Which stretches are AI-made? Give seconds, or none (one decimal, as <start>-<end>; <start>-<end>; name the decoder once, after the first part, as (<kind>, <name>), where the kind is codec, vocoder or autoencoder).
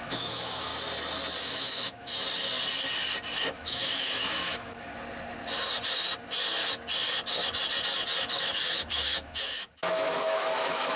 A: 0.0-0.7 (autoencoder, DAC-VAE); 1.4-2.1; 3.4-4.9; 8.2-11.0